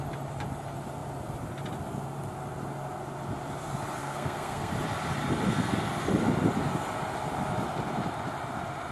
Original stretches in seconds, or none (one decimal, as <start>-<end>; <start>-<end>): 0.0-4.0; 4.7-8.9